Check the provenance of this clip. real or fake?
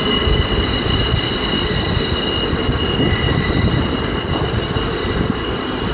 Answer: real